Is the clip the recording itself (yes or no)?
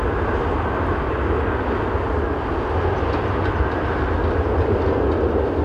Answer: yes